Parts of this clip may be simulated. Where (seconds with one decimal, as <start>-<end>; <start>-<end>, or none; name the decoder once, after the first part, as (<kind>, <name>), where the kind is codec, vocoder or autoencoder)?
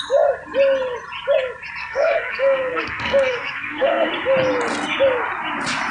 1.8-4.1 (codec, SNAC)